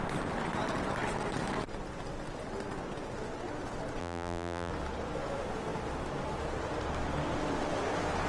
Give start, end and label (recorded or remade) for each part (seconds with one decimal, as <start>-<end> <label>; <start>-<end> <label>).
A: 0.0-4.0 recorded; 4.0-4.7 remade; 4.7-8.3 recorded